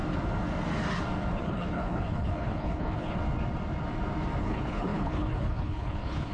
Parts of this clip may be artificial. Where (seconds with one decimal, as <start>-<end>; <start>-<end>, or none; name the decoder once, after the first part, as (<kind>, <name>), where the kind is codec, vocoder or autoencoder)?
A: 1.4-3.2 (codec, HILCodec); 4.4-6.3